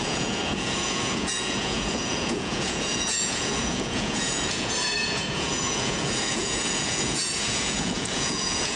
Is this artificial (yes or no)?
yes